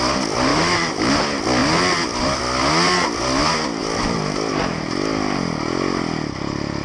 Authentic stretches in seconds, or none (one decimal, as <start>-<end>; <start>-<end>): 0.0-0.5; 1.1-6.8

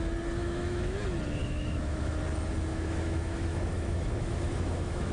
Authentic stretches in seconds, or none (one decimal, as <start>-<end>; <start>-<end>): 0.0-0.4; 1.0-1.4; 2.2-2.7

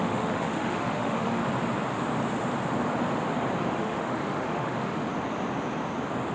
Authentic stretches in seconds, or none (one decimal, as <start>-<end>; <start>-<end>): 1.4-3.6; 5.1-6.3